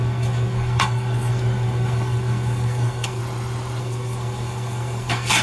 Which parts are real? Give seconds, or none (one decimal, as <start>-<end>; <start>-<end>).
3.2-3.8